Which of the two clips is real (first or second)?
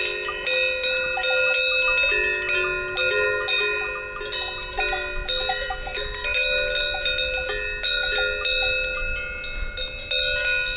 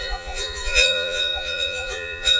first